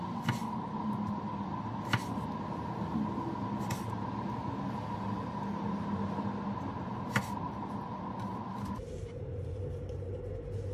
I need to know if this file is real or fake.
real